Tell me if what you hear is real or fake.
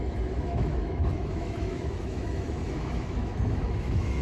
fake